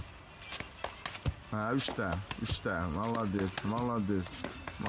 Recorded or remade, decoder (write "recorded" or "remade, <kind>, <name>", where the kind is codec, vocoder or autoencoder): recorded